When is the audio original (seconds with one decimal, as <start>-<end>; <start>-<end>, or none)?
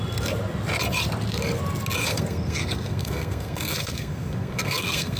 0.0-2.0